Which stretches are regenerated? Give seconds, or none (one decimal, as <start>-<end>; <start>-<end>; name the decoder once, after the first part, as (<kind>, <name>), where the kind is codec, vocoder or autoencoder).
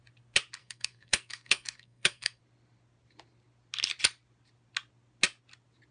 0.6-2.4 (codec, SNAC)